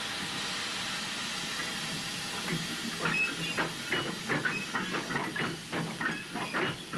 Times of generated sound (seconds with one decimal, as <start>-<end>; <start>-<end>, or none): none